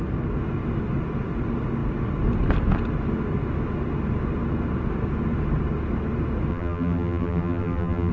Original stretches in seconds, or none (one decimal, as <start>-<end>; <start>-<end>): 0.0-6.5